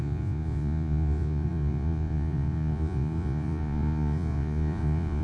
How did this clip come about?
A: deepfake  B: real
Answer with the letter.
A